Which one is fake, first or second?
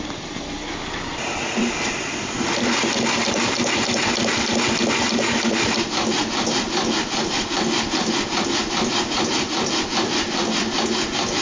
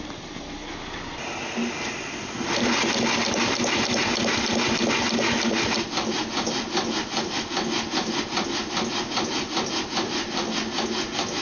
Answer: first